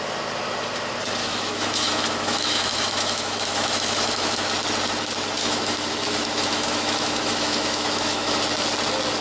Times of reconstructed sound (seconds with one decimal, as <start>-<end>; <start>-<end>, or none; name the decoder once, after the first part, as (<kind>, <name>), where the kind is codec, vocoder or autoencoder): 1.2-4.5 (autoencoder, DAC-VAE); 5.4-8.4